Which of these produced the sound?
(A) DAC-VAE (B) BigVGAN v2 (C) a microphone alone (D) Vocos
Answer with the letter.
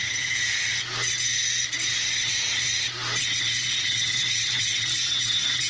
C